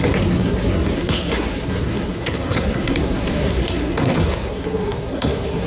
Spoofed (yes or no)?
yes